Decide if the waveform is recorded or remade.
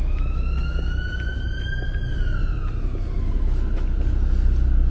recorded